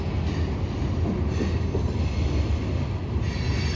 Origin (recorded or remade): recorded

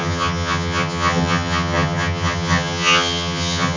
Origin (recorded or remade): remade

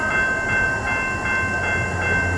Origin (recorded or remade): recorded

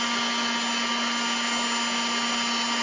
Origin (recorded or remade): recorded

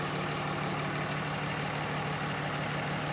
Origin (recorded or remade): recorded